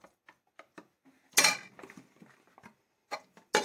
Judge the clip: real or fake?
real